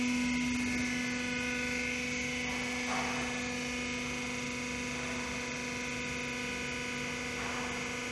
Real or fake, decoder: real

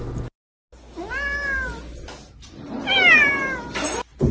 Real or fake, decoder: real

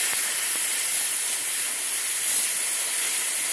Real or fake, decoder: real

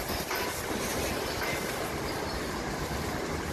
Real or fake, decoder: real